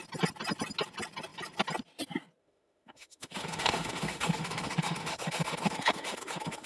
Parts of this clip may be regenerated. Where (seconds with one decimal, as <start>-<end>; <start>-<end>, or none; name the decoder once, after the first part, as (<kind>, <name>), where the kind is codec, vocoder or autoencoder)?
2.4-6.7 (autoencoder, DAC-VAE)